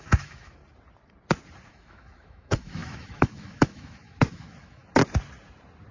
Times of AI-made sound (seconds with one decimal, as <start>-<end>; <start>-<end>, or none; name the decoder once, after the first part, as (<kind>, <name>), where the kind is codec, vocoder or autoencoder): 0.0-0.6 (autoencoder, DAC-VAE); 1.7-4.8